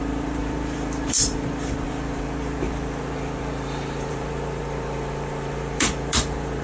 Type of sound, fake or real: fake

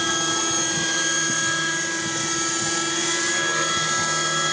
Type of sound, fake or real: real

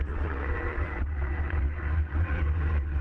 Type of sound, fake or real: fake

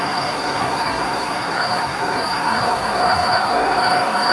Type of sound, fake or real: fake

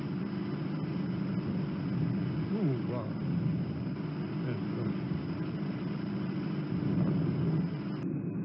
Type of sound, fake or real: real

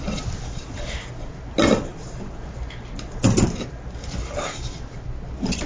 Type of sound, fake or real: real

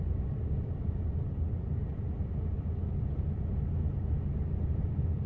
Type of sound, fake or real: real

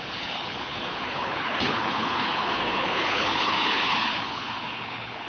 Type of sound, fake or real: fake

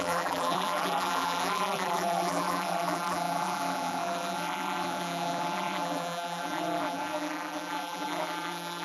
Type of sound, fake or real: fake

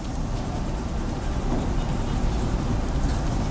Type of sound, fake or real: real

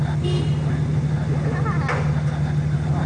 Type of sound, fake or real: real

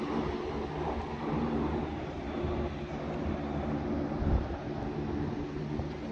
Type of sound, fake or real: real